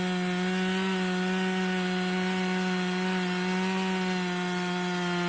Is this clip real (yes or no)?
yes